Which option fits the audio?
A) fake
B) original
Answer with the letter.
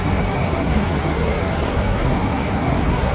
A